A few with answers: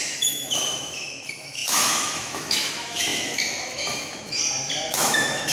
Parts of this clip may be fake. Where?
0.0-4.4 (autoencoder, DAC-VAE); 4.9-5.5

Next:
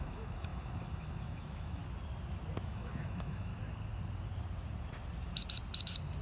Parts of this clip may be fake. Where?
0.0-1.8 (autoencoder, DAC-VAE); 2.6-3.5

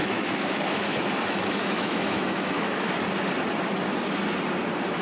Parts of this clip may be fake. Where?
0.0-2.9 (autoencoder, DAC-VAE)

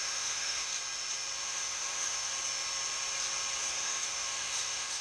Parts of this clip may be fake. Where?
0.0-0.7 (autoencoder, DAC-VAE); 1.4-2.3; 3.7-5.0